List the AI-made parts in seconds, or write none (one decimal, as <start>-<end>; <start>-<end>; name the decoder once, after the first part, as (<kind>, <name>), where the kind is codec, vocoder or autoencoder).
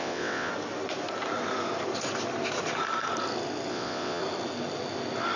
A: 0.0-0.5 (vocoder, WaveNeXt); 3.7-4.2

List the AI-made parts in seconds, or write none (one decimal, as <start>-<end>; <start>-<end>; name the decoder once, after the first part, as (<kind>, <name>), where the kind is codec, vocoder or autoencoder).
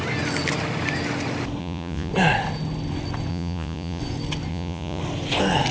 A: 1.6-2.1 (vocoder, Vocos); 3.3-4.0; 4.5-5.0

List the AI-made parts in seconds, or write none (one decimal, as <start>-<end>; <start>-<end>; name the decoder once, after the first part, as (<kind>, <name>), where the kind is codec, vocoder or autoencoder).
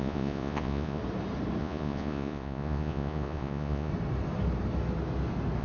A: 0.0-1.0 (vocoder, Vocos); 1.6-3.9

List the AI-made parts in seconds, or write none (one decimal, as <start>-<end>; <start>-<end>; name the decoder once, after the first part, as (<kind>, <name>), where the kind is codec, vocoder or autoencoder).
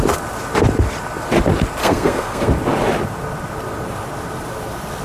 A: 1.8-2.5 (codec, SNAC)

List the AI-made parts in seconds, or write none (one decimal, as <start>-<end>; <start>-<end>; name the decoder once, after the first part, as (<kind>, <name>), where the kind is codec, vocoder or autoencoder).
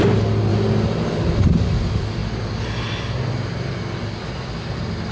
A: none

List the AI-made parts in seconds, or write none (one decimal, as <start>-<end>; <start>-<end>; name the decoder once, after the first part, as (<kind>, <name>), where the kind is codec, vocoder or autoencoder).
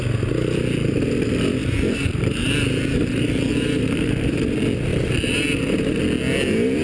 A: 1.6-4.5 (vocoder, BigVGAN v2); 4.9-6.0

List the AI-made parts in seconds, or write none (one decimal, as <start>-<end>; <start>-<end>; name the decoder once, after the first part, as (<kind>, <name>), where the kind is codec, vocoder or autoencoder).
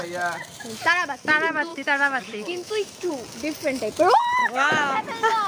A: 1.7-3.1 (autoencoder, DAC-VAE); 4.4-5.0